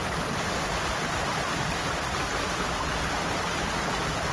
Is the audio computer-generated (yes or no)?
no